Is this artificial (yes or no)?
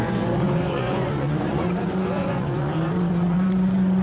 yes